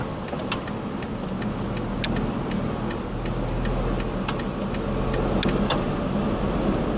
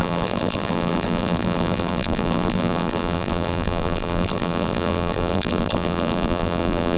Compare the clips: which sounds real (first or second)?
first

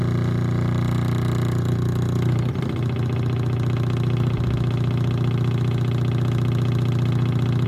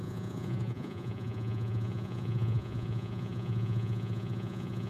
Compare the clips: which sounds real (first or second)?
first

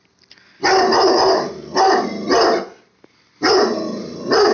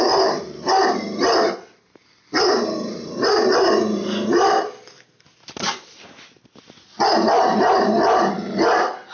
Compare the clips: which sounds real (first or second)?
first